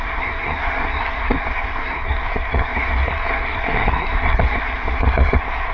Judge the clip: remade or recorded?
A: remade